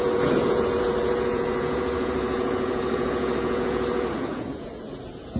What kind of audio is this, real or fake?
fake